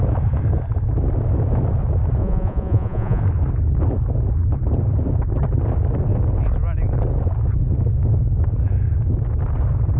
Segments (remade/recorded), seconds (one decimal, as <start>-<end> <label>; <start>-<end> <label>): 0.0-2.2 recorded; 2.2-3.2 remade; 3.2-10.0 recorded